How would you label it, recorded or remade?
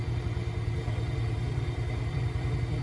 recorded